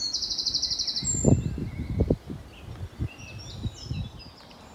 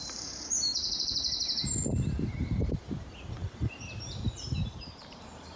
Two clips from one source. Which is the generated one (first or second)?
second